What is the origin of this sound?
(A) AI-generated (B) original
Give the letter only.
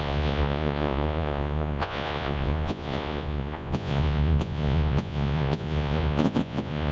A